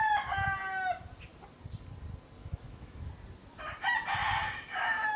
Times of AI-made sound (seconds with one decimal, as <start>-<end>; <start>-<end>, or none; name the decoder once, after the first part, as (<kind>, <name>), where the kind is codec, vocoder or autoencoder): 2.4-3.1 (autoencoder, DAC-VAE)